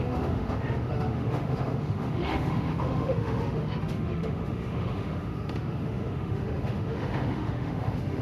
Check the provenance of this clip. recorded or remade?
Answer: remade